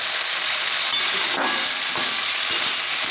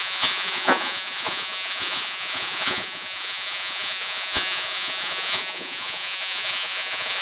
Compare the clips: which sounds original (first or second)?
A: first